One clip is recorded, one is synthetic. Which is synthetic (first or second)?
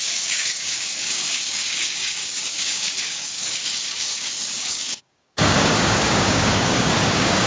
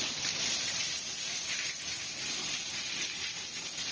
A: first